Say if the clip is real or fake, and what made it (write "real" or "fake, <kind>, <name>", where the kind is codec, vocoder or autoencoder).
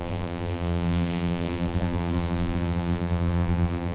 fake, vocoder, BigVGAN v2